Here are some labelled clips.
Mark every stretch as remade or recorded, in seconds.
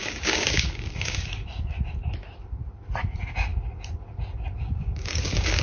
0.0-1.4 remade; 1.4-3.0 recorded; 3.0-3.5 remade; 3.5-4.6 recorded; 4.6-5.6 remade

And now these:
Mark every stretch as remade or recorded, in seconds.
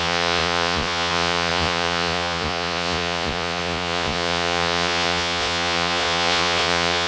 0.0-7.1 remade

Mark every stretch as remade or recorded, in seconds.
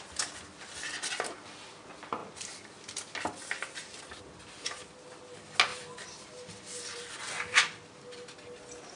0.0-5.7 recorded; 5.7-8.0 remade; 8.0-9.0 recorded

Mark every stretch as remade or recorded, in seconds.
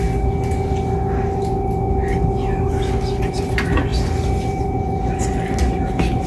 0.0-6.3 recorded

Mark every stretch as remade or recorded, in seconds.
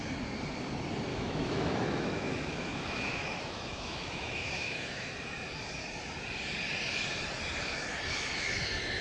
0.0-1.1 recorded; 1.1-5.1 remade; 5.1-9.0 recorded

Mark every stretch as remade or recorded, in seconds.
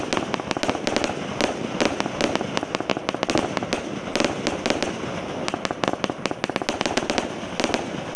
0.0-8.2 recorded